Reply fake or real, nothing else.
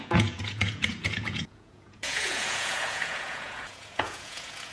fake